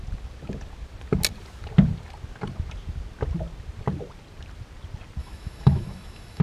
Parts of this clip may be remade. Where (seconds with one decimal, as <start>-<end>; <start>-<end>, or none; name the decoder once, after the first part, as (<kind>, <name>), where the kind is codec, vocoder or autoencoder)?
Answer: 5.2-6.4 (autoencoder, DAC-VAE)